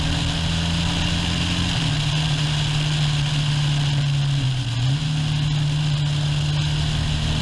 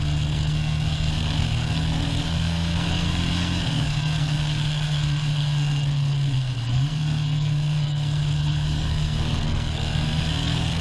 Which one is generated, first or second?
second